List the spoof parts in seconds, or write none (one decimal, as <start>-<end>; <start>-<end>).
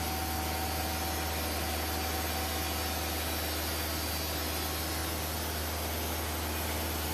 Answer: none